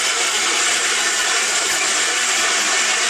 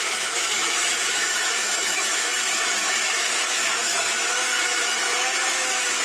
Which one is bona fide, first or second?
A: first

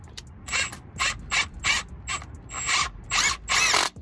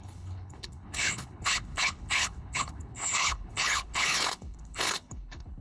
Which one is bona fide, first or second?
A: first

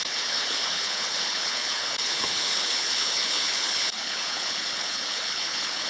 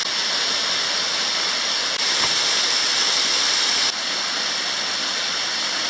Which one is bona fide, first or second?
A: second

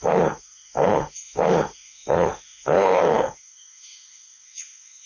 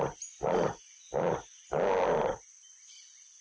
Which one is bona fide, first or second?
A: second